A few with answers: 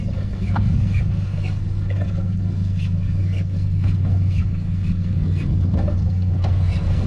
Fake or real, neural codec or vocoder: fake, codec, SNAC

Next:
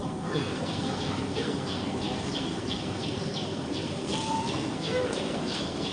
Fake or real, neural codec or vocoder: fake, codec, SNAC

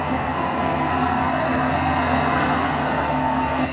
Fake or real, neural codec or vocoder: fake, codec, SNAC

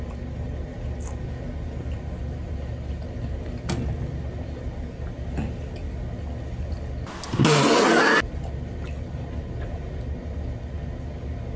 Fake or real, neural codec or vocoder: real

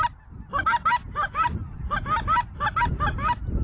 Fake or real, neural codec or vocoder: real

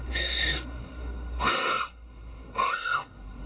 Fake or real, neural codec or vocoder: fake, codec, SNAC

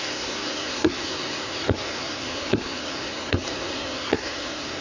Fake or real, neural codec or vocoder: fake, codec, SNAC